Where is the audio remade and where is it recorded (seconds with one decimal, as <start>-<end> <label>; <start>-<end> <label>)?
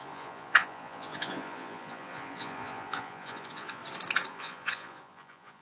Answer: 0.0-3.8 remade; 3.8-4.3 recorded; 4.3-5.6 remade